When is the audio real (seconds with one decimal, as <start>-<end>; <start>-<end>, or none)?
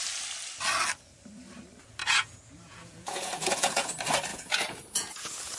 0.0-2.0; 3.9-4.3